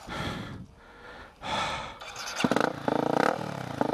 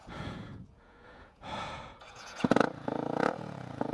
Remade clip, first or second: second